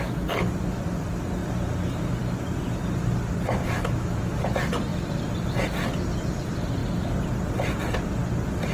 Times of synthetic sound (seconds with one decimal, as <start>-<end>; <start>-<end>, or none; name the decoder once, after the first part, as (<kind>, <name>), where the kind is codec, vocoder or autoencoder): 3.6-4.3 (autoencoder, DAC-VAE)